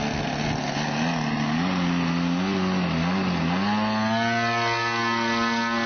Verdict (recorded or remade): recorded